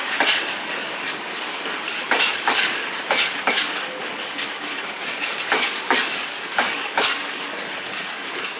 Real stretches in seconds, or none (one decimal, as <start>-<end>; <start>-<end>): none

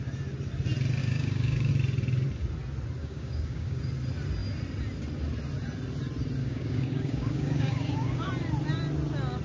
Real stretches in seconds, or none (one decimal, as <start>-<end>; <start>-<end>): 0.0-1.0; 1.7-3.0; 3.8-6.4; 8.3-9.4

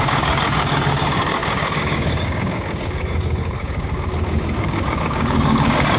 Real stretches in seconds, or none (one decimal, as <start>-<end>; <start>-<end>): none

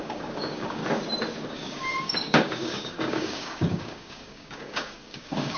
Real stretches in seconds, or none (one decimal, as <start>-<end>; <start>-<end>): 0.8-1.5

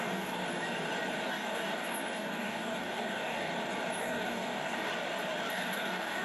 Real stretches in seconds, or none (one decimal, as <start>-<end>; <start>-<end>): 0.4-1.3; 3.5-4.0; 4.9-5.5

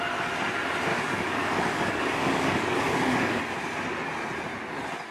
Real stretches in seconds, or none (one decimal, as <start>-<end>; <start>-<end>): 0.0-0.9; 3.4-5.1

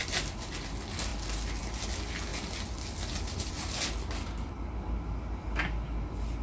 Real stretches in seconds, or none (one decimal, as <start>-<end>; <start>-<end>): 0.0-6.4